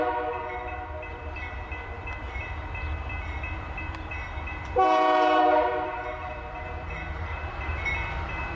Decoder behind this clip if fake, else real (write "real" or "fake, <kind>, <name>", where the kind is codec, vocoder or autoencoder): fake, vocoder, BigVGAN v2